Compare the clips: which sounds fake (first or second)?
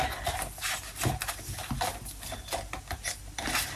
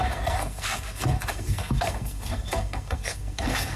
second